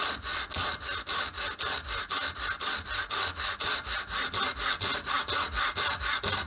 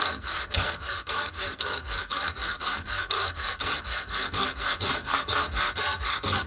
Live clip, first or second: first